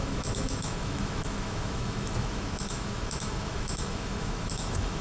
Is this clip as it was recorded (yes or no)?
no